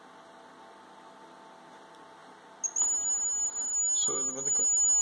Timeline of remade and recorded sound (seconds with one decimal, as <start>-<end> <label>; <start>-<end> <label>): 0.0-5.0 recorded